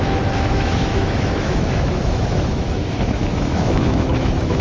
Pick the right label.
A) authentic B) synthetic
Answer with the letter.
B